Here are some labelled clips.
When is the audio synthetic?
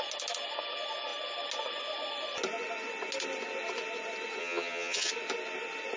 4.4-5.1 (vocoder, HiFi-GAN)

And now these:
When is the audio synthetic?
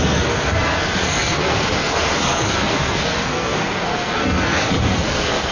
0.0-5.5 (codec, SNAC)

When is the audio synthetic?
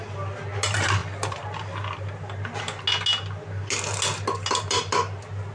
none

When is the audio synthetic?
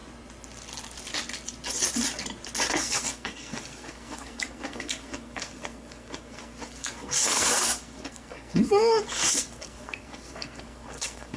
2.7-11.4 (codec, SNAC)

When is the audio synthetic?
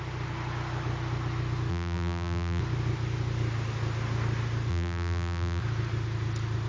1.7-2.6 (vocoder, BigVGAN v2); 4.7-5.6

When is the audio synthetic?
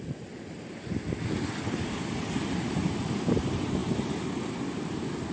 none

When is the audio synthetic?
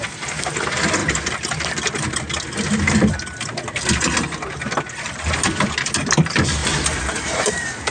6.6-7.5 (vocoder, BigVGAN v2)